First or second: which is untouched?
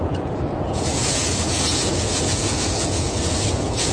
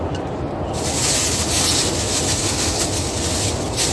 second